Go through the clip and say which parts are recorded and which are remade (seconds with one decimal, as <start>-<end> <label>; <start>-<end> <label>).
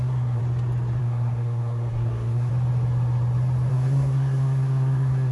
0.0-0.4 remade; 0.4-1.0 recorded; 1.0-2.5 remade; 2.5-3.7 recorded; 3.7-5.3 remade